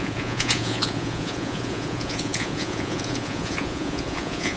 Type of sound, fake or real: fake